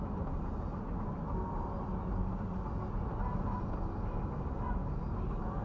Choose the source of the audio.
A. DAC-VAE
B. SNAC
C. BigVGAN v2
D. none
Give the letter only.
D